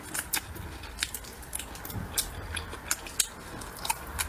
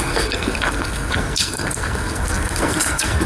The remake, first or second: second